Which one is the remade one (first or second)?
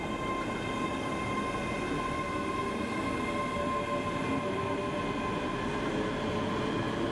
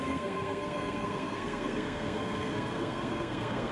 second